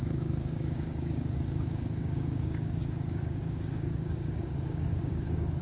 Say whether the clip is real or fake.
fake